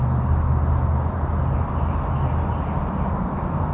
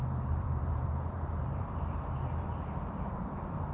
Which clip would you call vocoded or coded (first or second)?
second